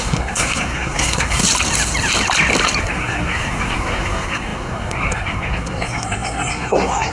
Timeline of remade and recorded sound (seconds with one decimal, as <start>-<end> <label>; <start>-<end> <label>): 0.0-1.4 remade; 1.4-2.8 recorded; 2.8-7.1 remade